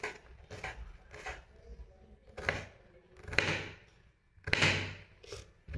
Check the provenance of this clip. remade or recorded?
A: recorded